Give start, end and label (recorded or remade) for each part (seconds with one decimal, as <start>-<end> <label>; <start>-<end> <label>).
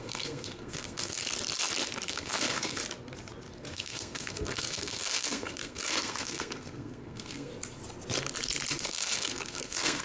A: 0.0-1.2 remade; 1.2-2.1 recorded; 2.1-2.8 remade; 2.8-3.7 recorded; 3.7-7.5 remade; 7.5-8.8 recorded; 8.8-10.0 remade